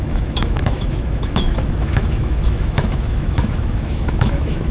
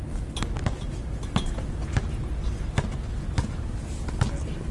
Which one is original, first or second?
second